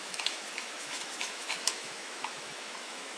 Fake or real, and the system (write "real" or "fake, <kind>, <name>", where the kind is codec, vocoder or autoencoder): fake, autoencoder, DAC-VAE